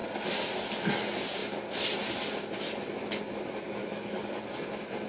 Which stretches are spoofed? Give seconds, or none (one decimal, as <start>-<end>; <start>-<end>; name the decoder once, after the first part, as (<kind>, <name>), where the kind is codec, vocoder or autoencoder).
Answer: 3.8-4.4 (codec, DAC)